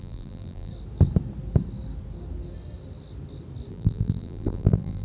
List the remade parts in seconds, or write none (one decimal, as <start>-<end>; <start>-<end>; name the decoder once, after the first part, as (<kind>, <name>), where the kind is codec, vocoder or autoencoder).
0.0-0.7 (vocoder, BigVGAN v2); 3.7-5.0